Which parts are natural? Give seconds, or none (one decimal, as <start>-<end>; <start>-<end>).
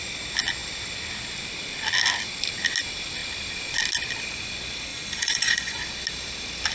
0.0-4.9; 5.8-6.7